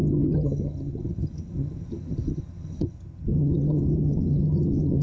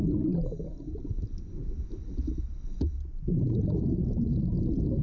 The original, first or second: second